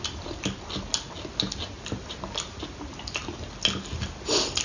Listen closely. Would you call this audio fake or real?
real